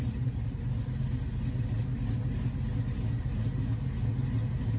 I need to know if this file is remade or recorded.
recorded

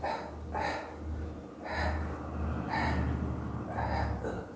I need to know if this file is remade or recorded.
recorded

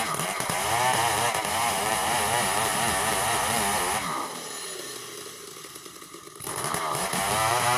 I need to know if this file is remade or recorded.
recorded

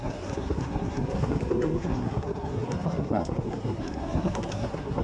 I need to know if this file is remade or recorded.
remade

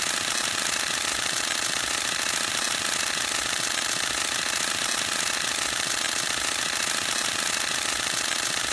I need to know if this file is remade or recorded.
recorded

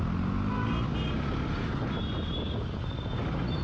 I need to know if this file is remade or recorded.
recorded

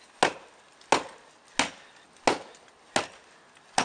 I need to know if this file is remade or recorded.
recorded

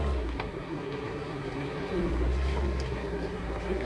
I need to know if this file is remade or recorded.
remade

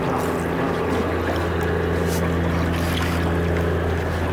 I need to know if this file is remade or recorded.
recorded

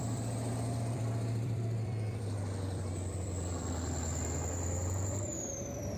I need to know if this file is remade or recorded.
remade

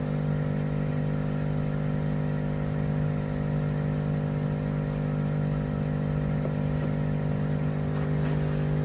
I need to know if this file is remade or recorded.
recorded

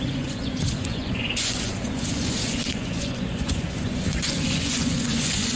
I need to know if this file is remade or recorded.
remade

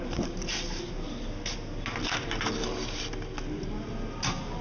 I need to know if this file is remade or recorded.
recorded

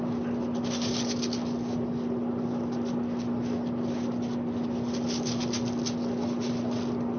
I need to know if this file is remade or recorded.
recorded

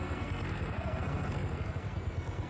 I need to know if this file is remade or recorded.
remade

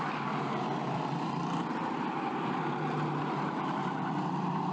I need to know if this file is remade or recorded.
remade